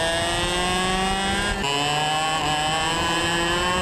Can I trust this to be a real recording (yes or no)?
yes